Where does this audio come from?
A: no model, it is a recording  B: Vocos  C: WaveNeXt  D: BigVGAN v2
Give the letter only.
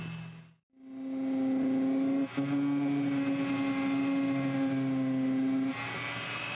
A